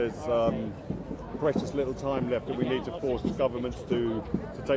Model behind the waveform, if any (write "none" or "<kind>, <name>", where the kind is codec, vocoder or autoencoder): none